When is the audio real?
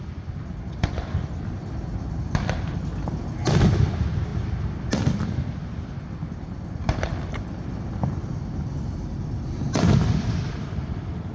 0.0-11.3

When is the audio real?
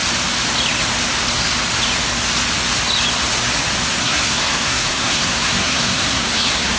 0.0-4.0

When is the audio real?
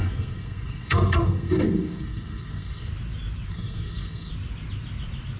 2.9-3.5; 4.3-5.4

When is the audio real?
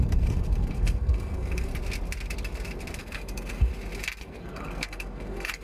1.7-3.0; 3.7-4.2